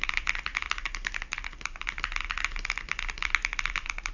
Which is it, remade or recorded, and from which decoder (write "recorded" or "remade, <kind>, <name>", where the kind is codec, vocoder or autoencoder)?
recorded